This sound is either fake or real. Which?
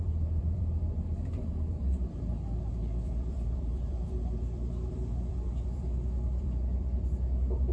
fake